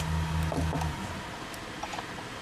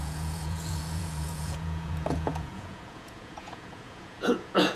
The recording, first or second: first